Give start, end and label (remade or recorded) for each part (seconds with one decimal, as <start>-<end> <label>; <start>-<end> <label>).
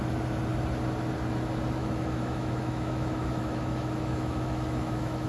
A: 0.0-1.8 recorded; 1.8-5.3 remade